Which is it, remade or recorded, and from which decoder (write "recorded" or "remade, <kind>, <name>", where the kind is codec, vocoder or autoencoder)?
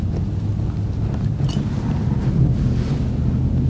recorded